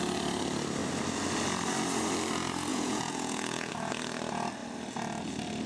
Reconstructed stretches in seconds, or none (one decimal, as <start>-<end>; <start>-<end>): 2.7-3.7